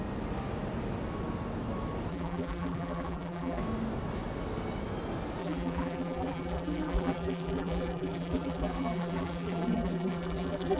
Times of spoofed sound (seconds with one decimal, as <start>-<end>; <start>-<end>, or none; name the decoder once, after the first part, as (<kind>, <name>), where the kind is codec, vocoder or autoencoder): 2.1-3.6 (vocoder, BigVGAN v2); 5.4-10.8